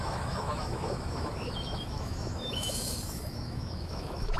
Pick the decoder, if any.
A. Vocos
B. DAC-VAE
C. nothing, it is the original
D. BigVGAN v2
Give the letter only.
B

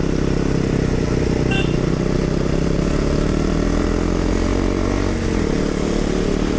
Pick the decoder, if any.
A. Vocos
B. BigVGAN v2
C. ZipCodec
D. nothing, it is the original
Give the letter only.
D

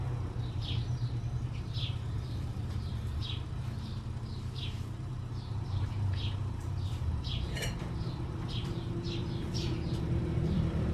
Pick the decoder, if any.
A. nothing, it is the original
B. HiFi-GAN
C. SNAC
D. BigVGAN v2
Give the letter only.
D